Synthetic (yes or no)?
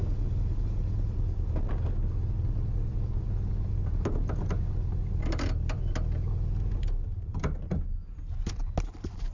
no